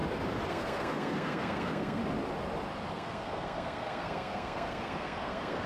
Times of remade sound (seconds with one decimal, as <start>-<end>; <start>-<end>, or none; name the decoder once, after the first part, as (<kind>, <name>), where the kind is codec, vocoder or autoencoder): 0.5-2.0 (codec, SNAC); 2.9-5.7